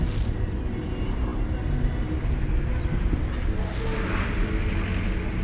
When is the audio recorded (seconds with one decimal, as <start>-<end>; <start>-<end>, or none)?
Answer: 0.0-5.4